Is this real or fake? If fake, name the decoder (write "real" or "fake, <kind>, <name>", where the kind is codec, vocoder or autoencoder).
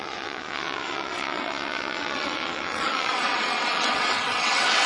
fake, vocoder, WaveNeXt